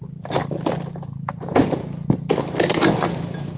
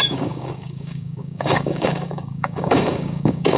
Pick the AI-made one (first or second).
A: second